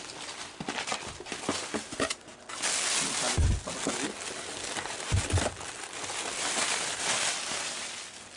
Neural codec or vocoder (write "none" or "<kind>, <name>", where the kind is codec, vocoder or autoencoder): none